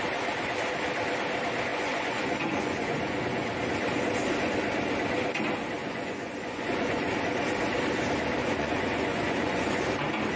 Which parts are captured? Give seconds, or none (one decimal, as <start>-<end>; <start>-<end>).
0.0-1.7; 3.5-5.8; 7.1-8.4; 9.8-10.4